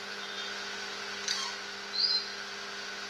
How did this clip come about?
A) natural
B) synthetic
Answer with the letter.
A